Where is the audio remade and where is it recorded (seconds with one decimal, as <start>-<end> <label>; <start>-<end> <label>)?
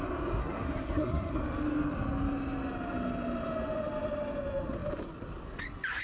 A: 0.0-0.4 recorded; 0.4-1.4 remade; 1.4-6.0 recorded